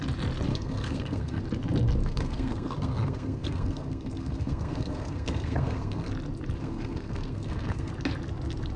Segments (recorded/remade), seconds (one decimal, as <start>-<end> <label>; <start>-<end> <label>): 0.0-0.5 recorded; 0.5-1.4 remade; 1.4-2.0 recorded; 2.0-6.1 remade; 6.1-6.6 recorded; 6.6-7.9 remade; 7.9-8.8 recorded